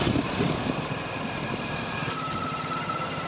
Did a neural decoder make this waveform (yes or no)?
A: no